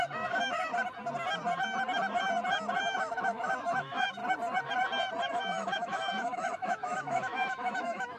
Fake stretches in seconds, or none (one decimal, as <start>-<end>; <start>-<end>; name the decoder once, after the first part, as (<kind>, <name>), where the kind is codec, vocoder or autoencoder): 0.0-0.7 (autoencoder, DAC-VAE); 3.0-4.2; 5.3-8.2